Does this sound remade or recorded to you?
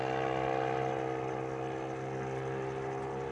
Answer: recorded